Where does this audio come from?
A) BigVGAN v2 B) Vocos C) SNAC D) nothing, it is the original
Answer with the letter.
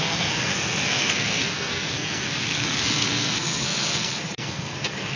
C